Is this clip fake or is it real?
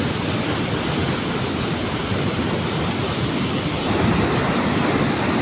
real